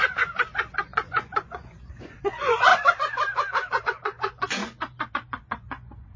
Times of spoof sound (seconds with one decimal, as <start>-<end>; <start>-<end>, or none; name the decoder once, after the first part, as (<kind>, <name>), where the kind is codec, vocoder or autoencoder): 0.0-2.7 (vocoder, Vocos); 3.8-4.6; 5.1-6.2